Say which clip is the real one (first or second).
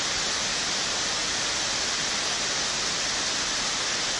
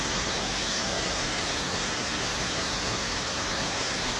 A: first